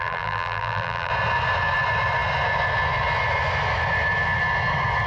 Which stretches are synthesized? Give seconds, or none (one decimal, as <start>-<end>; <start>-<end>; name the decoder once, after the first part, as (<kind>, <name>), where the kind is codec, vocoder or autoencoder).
0.0-1.1 (vocoder, BigVGAN v2)